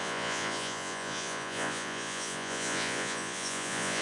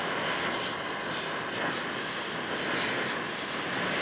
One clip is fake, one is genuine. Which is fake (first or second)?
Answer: first